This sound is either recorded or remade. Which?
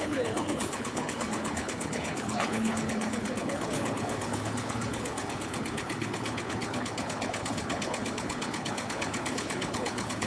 remade